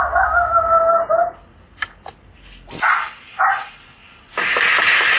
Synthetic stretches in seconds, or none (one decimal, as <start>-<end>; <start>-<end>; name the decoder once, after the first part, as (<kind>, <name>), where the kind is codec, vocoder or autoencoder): none